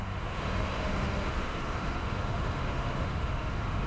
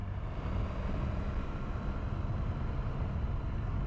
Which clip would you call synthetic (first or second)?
first